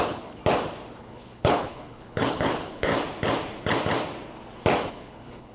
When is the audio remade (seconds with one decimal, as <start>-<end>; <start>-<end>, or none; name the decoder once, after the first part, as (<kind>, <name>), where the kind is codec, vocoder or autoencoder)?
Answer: 0.0-0.4 (codec, HILCodec); 1.0-2.9; 4.9-5.5